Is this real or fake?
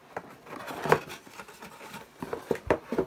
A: real